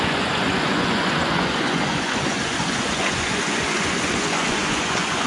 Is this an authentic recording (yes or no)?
no